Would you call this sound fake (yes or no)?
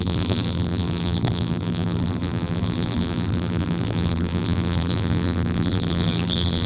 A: yes